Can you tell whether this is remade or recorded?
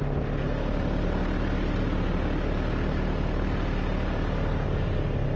recorded